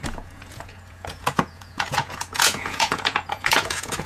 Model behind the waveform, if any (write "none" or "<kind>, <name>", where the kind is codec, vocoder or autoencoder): vocoder, Vocos